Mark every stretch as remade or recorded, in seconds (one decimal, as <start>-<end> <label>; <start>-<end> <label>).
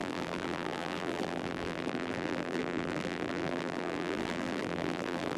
0.0-5.4 remade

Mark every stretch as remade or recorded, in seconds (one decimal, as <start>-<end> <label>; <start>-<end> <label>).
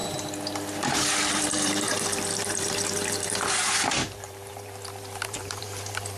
0.0-1.3 recorded; 1.3-6.2 remade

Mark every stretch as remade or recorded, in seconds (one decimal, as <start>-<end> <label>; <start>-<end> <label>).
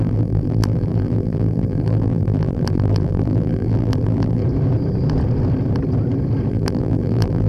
0.0-4.4 remade; 4.4-6.5 recorded; 6.5-7.5 remade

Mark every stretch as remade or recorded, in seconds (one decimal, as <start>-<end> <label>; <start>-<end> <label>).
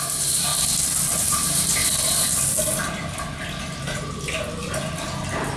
0.0-0.5 remade; 0.5-1.2 recorded; 1.2-1.8 remade; 1.8-5.6 recorded